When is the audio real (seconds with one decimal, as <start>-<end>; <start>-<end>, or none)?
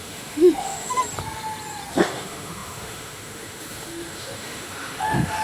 1.0-1.9